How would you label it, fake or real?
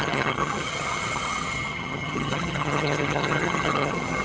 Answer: fake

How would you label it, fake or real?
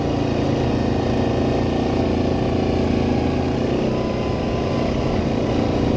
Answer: real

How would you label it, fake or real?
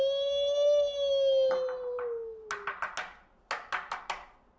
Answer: real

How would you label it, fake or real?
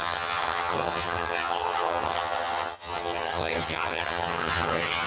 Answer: fake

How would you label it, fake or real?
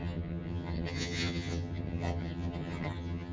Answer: fake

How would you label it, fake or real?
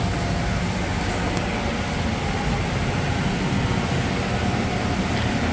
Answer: real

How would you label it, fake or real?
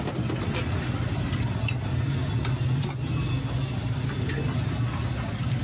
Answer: real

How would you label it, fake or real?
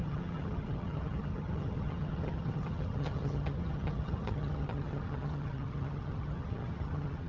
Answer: fake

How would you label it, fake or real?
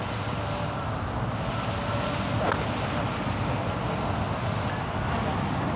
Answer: real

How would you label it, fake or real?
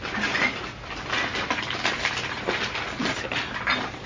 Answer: real